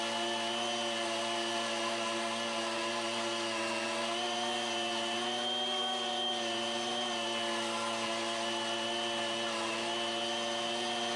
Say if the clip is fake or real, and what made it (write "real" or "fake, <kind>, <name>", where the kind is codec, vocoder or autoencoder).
real